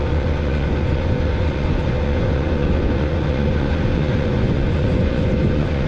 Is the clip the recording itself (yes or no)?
no